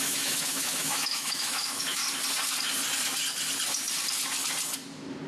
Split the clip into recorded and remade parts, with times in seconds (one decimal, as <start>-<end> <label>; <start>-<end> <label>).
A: 0.0-2.0 remade; 2.0-5.3 recorded